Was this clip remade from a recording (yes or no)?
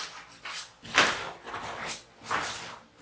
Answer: no